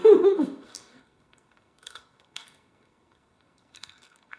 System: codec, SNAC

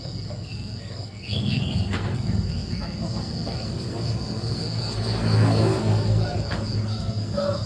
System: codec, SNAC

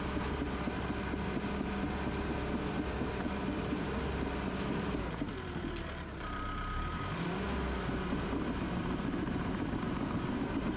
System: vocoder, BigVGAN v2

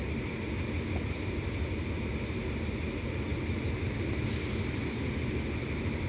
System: none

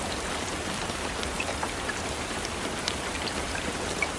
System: none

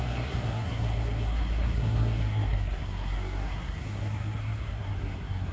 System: codec, SNAC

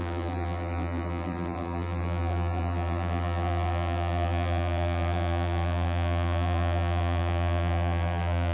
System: vocoder, BigVGAN v2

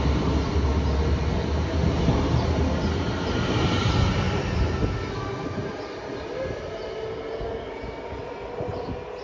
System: none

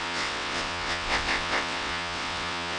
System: vocoder, WaveNeXt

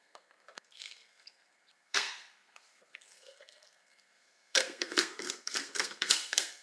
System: codec, SNAC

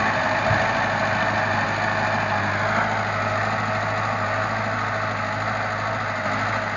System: none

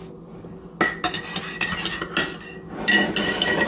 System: none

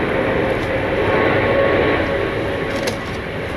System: none